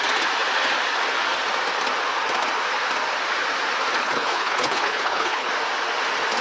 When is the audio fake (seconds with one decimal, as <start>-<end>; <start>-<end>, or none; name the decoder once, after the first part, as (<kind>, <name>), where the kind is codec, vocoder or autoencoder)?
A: 4.0-5.5 (codec, HILCodec)